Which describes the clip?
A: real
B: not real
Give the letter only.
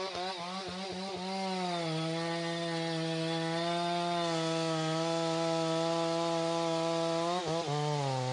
A